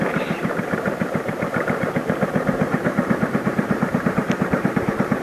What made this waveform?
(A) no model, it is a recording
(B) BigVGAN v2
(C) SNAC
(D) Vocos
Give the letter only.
B